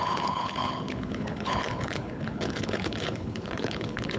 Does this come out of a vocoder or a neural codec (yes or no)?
yes